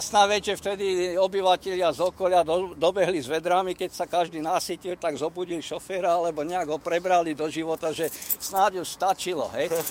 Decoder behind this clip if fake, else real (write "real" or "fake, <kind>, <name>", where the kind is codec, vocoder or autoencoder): fake, autoencoder, DAC-VAE